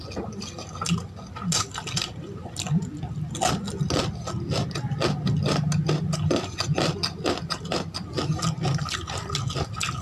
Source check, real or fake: real